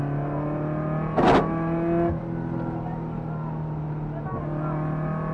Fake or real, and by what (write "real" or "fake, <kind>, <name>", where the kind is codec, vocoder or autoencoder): real